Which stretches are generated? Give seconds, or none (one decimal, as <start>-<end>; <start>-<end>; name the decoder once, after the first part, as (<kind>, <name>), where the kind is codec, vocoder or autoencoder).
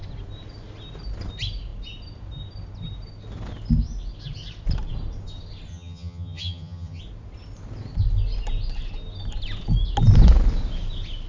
5.7-7.0 (vocoder, HiFi-GAN)